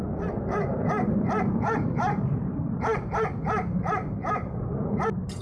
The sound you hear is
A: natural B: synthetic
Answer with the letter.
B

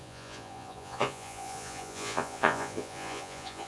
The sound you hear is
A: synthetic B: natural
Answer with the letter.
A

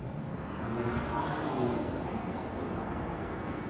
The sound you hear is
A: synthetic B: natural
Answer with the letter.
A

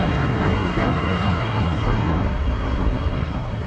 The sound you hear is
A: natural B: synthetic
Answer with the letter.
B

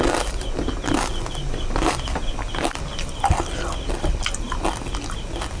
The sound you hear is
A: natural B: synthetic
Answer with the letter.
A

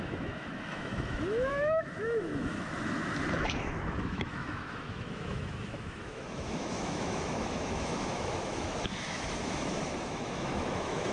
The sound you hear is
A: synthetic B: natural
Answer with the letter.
A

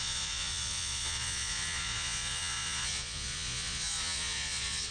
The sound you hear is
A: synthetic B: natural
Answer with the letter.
A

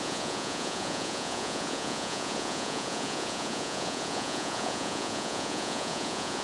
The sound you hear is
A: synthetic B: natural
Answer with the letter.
A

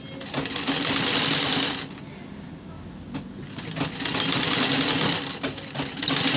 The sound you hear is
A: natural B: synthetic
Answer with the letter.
A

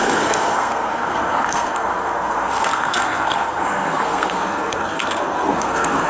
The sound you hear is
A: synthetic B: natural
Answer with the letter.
A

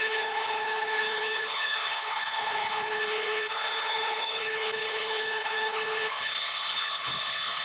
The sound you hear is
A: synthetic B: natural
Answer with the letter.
A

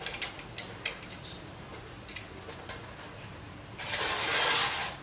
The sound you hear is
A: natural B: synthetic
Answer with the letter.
A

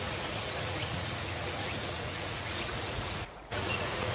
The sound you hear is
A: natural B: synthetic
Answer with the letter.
B